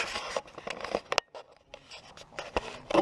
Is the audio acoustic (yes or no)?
yes